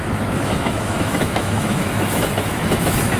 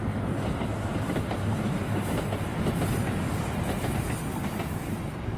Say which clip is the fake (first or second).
first